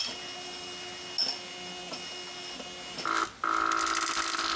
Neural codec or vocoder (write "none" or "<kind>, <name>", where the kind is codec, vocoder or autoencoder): none